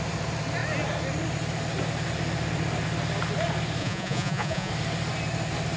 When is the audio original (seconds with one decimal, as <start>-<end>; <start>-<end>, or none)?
0.0-3.8; 4.7-5.8